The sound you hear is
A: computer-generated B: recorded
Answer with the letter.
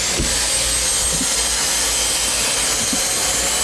B